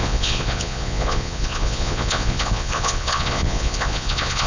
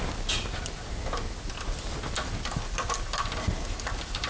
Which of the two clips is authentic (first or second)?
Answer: second